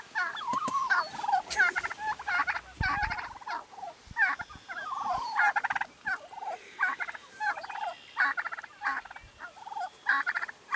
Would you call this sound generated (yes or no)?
no